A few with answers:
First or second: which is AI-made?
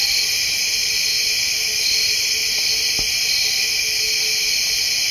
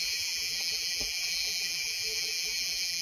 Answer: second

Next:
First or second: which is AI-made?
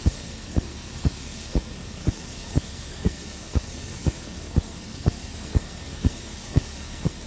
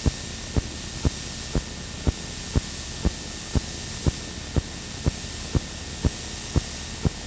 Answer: first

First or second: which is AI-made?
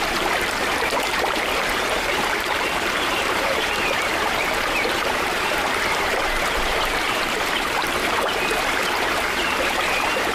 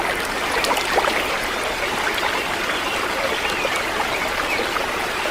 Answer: first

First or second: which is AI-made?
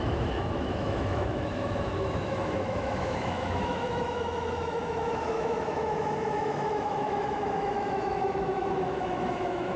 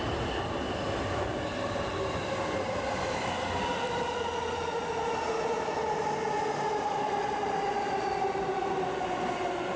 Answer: first